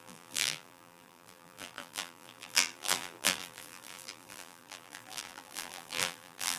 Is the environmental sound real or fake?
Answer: fake